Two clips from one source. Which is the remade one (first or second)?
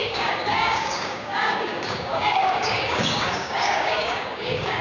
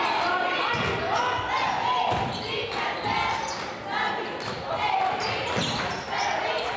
first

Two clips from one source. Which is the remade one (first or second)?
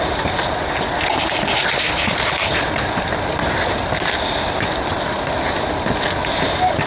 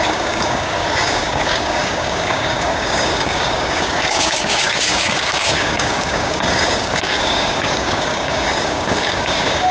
second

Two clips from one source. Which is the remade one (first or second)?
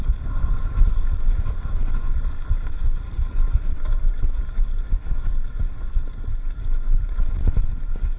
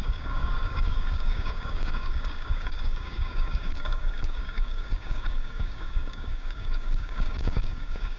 second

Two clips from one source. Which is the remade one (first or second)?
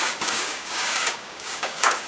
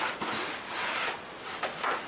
first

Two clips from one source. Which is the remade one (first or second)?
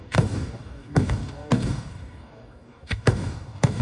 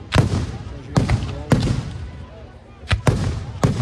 first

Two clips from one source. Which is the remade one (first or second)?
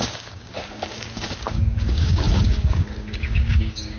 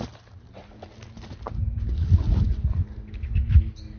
first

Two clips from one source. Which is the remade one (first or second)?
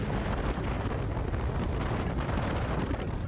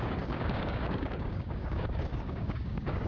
second